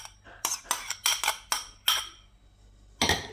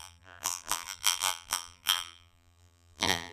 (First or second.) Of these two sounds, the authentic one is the first